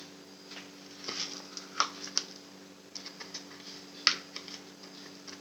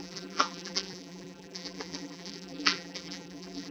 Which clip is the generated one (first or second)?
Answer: second